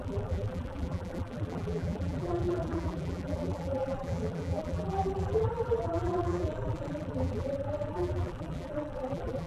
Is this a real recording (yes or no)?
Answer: no